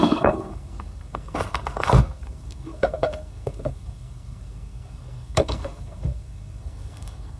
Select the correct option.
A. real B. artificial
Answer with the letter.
B